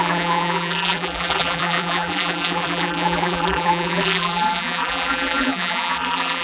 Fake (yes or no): yes